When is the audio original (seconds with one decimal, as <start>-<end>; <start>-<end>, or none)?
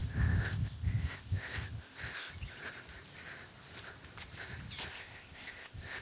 2.3-4.9